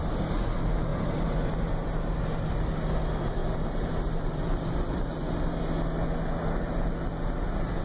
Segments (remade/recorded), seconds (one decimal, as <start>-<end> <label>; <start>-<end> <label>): 0.0-0.9 recorded; 0.9-1.5 remade; 1.5-3.4 recorded; 3.4-5.5 remade; 5.5-7.8 recorded